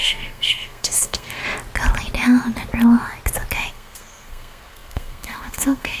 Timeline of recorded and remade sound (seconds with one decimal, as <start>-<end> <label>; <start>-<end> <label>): 0.0-1.4 remade; 1.4-3.7 recorded; 3.7-6.0 remade

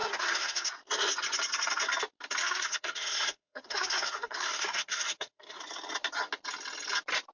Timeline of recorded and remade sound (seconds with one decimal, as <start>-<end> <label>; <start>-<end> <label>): 0.0-0.7 remade; 0.7-2.4 recorded; 2.4-5.6 remade; 5.6-7.3 recorded

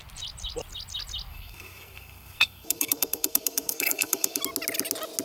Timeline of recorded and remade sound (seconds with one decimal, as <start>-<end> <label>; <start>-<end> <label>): 0.0-1.3 recorded; 1.3-4.4 remade; 4.4-5.2 recorded